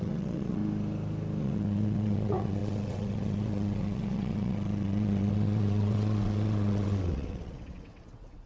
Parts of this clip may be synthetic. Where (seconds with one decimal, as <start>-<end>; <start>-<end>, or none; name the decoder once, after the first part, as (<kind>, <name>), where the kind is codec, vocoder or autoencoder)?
0.0-0.6 (vocoder, WaveNeXt); 1.4-8.5